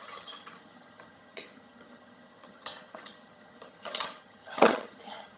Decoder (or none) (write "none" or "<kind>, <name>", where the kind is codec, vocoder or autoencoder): vocoder, HiFi-GAN